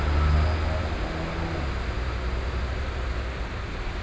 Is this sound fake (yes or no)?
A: no